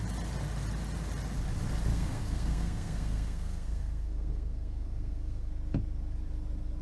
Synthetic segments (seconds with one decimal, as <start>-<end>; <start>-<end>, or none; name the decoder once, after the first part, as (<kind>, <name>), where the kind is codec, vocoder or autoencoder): 1.9-5.5 (codec, SNAC)